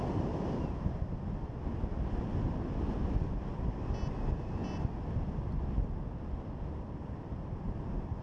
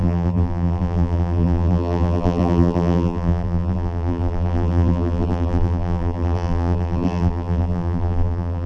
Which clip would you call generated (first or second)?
second